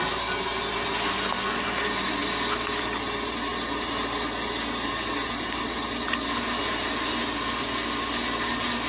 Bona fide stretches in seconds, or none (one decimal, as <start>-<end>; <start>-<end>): 0.0-8.9